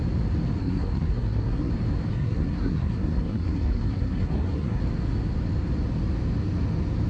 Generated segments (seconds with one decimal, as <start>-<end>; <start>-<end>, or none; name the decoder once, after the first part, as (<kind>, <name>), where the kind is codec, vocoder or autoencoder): 0.6-1.7 (codec, SNAC); 2.1-4.8